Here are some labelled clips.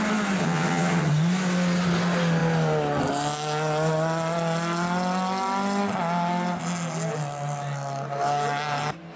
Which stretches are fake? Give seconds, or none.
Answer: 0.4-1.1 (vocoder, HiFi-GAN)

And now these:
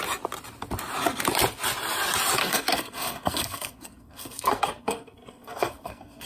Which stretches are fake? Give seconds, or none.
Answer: 2.4-6.3 (codec, SNAC)

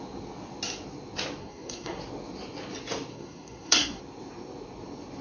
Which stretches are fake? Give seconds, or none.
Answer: 1.4-2.0 (codec, SNAC); 3.1-4.0

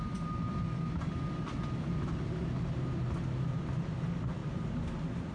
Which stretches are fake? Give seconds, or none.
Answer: none

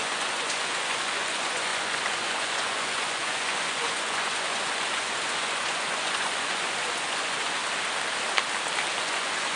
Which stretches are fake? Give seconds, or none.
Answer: 0.0-7.6 (vocoder, Vocos); 9.0-9.6